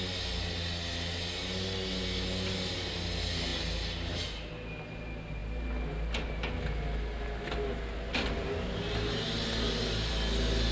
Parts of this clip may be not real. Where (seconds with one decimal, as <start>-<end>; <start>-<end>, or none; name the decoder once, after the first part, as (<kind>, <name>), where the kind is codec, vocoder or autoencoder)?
none